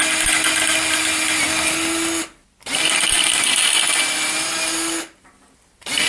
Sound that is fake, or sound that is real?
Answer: real